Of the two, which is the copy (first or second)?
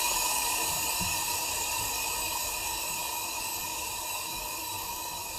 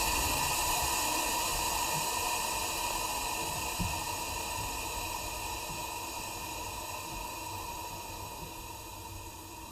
first